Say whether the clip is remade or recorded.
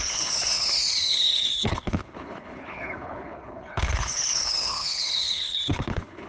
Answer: remade